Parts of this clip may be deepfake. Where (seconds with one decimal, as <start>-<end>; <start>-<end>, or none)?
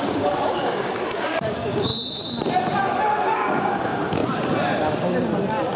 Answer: 0.0-1.9; 3.0-4.2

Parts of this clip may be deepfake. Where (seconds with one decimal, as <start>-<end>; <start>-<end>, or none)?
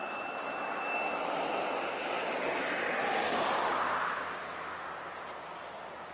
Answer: 0.0-0.8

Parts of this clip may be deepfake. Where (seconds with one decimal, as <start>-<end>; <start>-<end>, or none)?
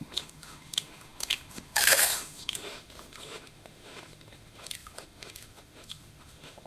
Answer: 0.0-6.7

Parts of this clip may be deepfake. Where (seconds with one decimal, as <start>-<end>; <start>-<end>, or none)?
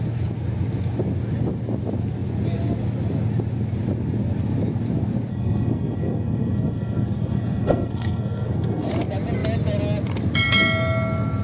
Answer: 5.3-8.9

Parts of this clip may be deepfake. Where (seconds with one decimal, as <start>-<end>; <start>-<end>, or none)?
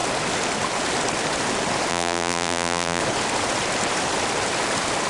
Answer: 1.9-3.0